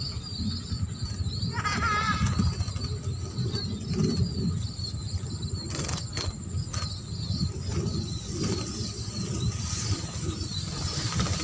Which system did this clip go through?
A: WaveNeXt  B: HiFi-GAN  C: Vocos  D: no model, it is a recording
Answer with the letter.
D